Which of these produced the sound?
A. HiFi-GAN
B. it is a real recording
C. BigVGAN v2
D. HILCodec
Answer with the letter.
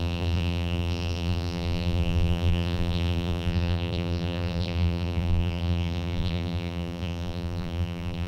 C